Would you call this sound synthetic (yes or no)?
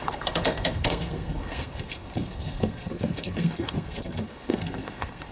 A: yes